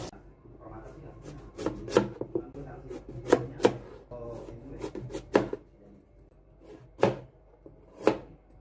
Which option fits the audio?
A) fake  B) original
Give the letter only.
B